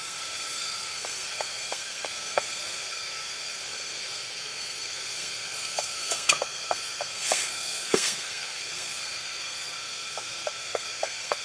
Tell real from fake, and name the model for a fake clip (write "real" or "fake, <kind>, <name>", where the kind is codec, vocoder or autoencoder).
fake, codec, SNAC